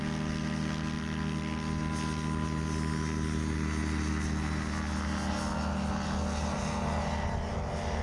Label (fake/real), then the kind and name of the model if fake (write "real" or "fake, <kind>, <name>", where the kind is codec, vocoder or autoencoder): real